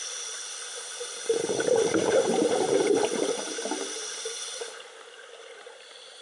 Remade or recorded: recorded